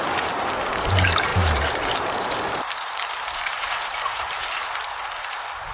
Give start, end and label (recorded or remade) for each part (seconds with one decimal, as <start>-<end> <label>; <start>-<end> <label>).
0.0-5.7 remade